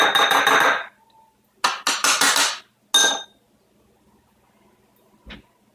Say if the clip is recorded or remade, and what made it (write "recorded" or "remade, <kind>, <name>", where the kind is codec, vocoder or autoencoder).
recorded